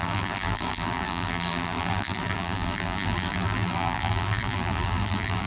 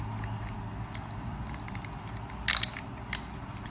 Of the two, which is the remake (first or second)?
first